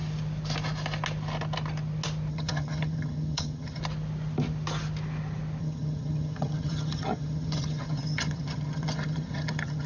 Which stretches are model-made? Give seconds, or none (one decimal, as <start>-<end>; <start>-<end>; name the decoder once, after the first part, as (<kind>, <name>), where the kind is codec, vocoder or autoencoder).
2.3-3.8 (vocoder, HiFi-GAN); 5.6-9.9